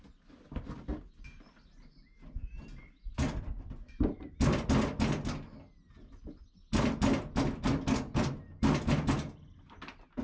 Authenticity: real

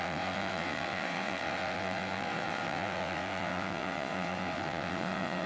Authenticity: fake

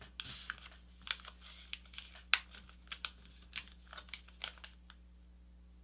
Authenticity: real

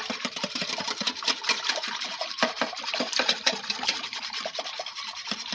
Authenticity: fake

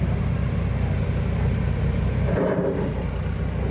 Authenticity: real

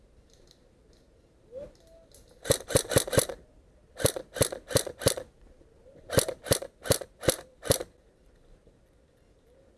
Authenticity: real